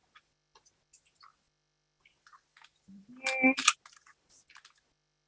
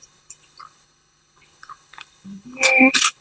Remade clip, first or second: second